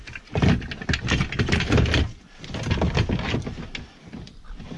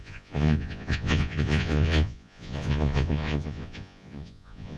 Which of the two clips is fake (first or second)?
second